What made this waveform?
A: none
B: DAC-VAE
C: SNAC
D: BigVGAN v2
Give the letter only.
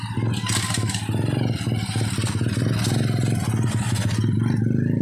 A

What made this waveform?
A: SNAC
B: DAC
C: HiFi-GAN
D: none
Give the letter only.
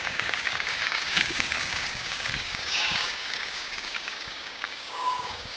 B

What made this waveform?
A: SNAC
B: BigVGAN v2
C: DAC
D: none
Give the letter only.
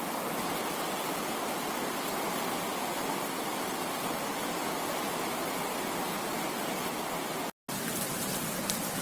D